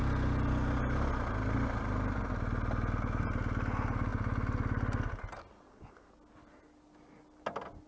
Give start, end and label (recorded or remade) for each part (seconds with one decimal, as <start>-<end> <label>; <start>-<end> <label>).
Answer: 0.0-7.9 recorded

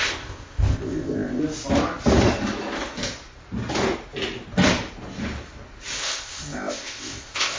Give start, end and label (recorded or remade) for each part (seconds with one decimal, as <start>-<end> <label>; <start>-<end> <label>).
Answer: 0.0-1.4 remade; 1.4-6.0 recorded; 6.0-7.6 remade

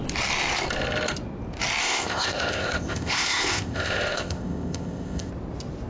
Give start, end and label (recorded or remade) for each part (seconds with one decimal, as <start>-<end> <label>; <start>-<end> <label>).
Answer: 0.0-1.8 recorded; 1.8-5.3 remade; 5.3-5.9 recorded

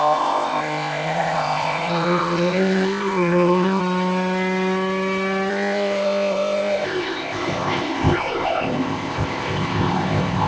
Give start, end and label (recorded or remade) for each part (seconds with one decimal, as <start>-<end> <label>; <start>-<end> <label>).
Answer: 0.0-3.8 remade; 3.8-5.5 recorded; 5.5-10.5 remade

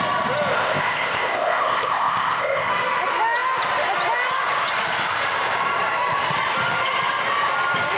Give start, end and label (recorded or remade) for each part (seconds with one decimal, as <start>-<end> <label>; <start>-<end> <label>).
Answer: 0.0-0.5 recorded; 0.5-2.7 remade; 2.7-8.0 recorded

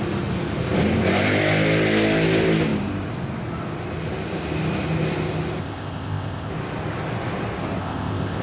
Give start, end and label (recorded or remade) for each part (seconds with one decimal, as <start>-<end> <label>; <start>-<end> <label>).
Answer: 0.0-5.6 recorded; 5.6-6.5 remade; 6.5-7.8 recorded; 7.8-8.4 remade

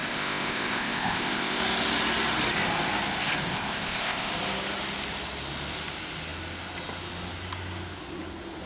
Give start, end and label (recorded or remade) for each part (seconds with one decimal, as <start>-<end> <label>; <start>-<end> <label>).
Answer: 0.0-1.6 remade; 1.6-3.5 recorded; 3.5-4.3 remade; 4.3-8.7 recorded

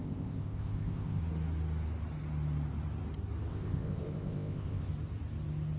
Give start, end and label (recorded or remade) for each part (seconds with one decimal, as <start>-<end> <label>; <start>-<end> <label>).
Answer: 0.0-1.2 remade; 1.2-3.5 recorded; 3.5-4.9 remade; 4.9-5.8 recorded